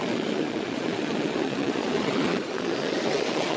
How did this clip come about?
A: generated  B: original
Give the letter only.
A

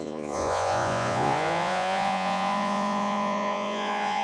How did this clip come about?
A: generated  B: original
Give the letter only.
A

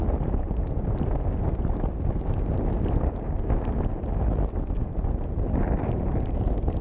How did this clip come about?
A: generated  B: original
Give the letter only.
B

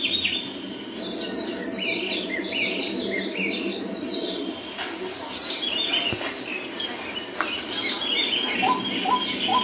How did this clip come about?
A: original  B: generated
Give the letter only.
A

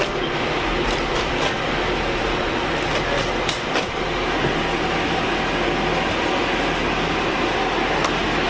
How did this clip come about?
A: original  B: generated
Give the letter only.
A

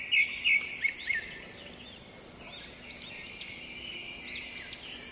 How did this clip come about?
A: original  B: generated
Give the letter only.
A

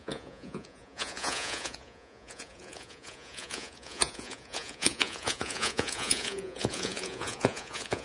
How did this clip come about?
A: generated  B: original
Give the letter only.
A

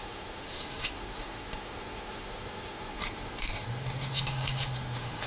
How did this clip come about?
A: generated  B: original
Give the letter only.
A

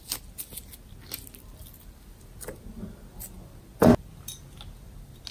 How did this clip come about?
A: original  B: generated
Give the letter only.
A